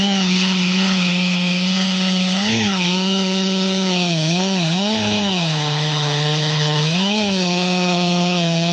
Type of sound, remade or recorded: remade